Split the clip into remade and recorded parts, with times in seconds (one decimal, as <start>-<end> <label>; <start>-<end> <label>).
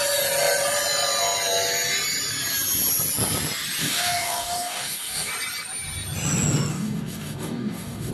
0.0-3.8 recorded; 3.8-5.3 remade; 5.3-6.7 recorded; 6.7-8.1 remade